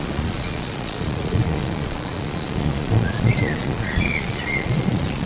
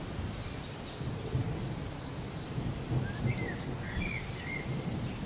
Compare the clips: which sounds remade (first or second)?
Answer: first